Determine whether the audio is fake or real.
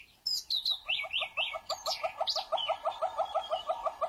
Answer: real